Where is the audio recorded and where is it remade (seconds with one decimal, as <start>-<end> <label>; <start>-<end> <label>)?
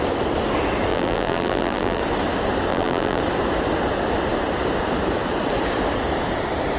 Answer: 0.0-0.9 recorded; 0.9-2.0 remade; 2.0-2.7 recorded; 2.7-3.2 remade; 3.2-6.8 recorded